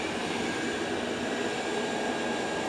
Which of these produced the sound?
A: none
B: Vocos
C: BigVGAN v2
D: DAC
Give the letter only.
A